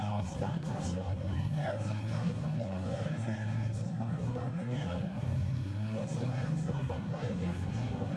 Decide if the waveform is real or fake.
fake